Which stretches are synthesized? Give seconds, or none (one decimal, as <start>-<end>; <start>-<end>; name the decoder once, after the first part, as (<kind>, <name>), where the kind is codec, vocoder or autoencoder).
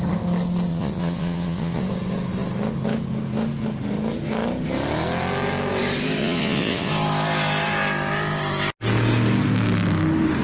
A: 0.7-1.8 (vocoder, Vocos); 6.2-6.9